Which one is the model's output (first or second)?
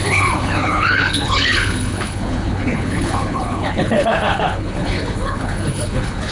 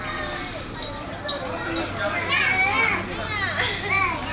first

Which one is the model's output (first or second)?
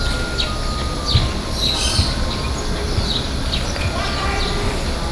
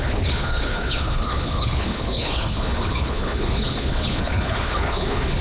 second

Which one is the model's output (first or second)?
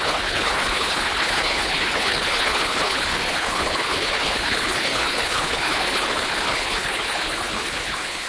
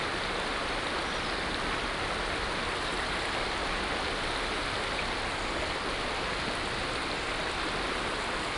first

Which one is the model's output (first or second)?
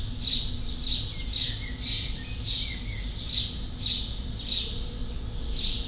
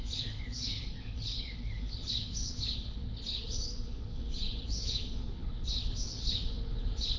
second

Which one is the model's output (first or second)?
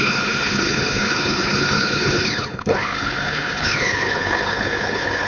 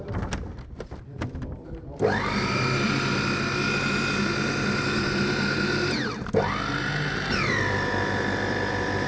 first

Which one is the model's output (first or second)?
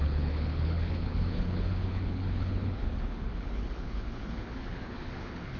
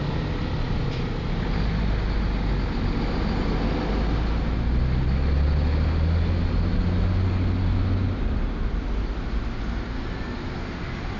first